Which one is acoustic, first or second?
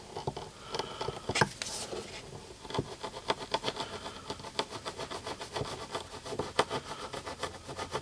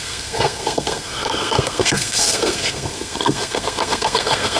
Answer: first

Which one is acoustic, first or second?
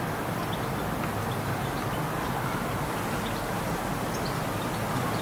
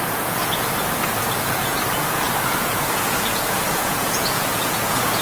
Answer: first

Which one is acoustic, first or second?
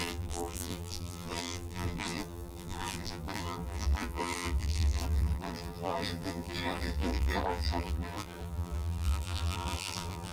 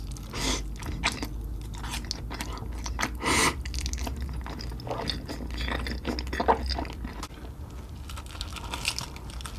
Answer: second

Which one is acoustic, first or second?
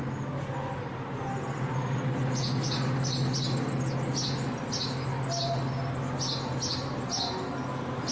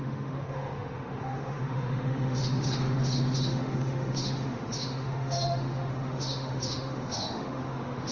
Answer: first